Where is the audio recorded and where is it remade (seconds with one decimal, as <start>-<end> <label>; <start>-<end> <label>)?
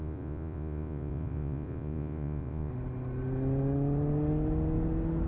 0.0-2.7 remade; 2.7-5.3 recorded